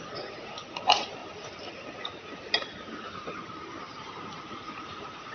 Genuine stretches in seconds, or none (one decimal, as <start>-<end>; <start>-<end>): 1.2-4.4